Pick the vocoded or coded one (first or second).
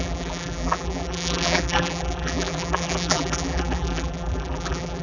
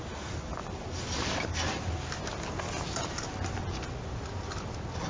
first